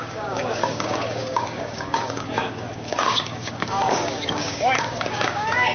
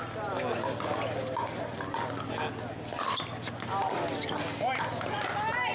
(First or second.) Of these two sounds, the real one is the second